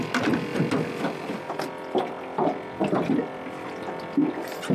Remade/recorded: recorded